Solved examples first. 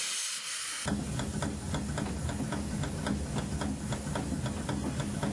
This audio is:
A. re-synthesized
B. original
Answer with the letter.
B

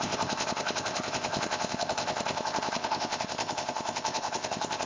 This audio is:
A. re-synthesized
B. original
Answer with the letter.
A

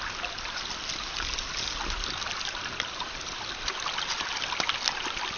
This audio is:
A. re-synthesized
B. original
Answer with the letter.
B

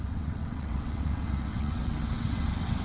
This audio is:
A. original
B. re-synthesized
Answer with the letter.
B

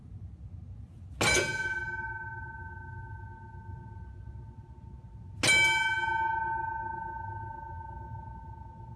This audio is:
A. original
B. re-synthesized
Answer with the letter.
A